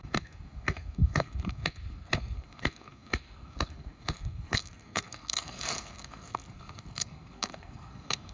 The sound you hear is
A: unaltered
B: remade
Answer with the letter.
B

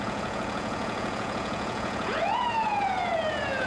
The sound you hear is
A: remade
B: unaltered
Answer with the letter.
A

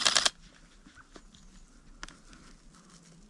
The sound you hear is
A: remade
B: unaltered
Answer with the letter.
B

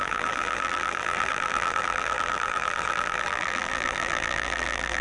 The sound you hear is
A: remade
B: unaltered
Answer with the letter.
A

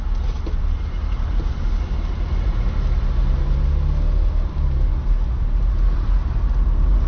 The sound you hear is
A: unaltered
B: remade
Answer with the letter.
A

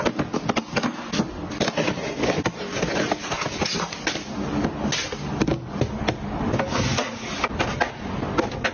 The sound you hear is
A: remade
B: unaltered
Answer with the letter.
B